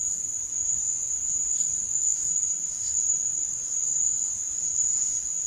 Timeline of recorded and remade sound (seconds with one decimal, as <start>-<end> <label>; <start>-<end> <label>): 0.0-5.5 recorded